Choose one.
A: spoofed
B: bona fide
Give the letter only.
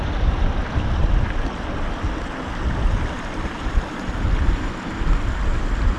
B